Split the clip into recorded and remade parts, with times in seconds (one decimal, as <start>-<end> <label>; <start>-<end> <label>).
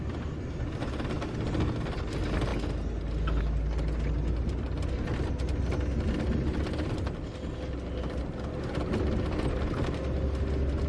0.0-10.9 recorded